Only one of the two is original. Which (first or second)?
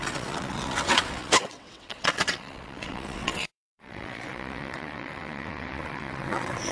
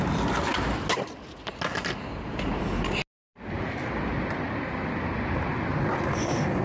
second